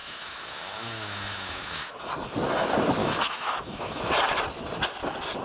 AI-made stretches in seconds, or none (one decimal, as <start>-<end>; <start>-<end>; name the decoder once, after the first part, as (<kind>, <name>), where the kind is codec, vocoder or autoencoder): 0.0-1.9 (autoencoder, DAC-VAE); 3.0-4.0